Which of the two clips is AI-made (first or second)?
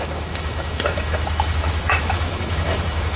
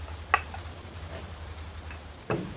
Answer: first